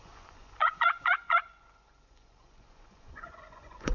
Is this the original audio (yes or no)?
no